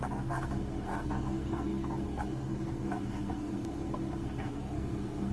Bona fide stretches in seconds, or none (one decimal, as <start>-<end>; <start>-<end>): none